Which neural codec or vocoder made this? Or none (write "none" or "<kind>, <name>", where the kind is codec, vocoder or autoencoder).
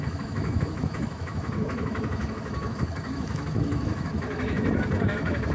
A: autoencoder, DAC-VAE